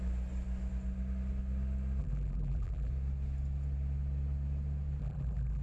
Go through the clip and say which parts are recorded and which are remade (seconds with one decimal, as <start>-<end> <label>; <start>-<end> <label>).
0.0-2.0 recorded; 2.0-2.9 remade; 2.9-5.0 recorded; 5.0-5.6 remade

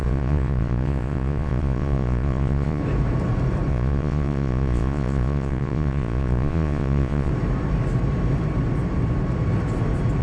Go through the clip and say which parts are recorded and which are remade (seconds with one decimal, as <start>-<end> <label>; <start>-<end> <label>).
0.0-2.8 remade; 2.8-3.7 recorded; 3.7-7.3 remade; 7.3-10.2 recorded

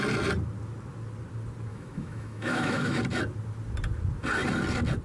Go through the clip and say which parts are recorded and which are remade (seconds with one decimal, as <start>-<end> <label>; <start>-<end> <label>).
0.0-1.7 recorded; 1.7-3.0 remade; 3.0-5.0 recorded

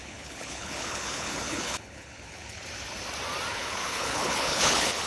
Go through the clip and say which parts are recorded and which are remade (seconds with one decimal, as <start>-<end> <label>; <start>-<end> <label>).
0.0-2.6 remade; 2.6-3.5 recorded; 3.5-5.1 remade